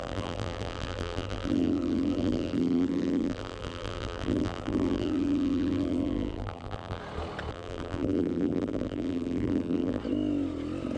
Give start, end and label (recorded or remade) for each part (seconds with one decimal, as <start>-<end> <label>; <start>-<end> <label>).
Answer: 0.0-7.0 remade; 7.0-7.5 recorded; 7.5-10.0 remade; 10.0-11.0 recorded